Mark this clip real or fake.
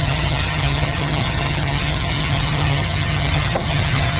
fake